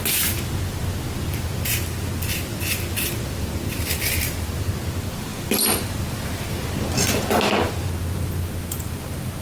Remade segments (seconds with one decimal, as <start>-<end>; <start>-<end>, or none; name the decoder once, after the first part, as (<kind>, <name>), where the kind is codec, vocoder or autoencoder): 1.7-4.7 (vocoder, BigVGAN v2); 5.3-6.5